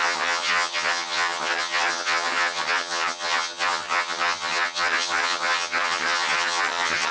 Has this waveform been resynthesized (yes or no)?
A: yes